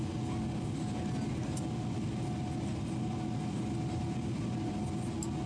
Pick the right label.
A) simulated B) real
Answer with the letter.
B